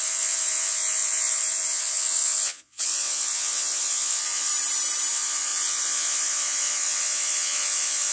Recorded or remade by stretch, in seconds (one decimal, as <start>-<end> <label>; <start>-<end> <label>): 0.0-4.5 remade; 4.5-5.1 recorded; 5.1-8.1 remade